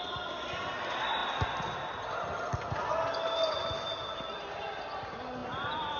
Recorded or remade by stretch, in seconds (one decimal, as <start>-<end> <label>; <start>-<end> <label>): 0.0-6.0 recorded